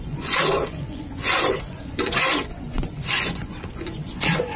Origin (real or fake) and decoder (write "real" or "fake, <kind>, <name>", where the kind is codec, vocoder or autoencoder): fake, vocoder, Vocos